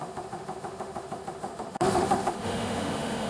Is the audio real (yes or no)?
no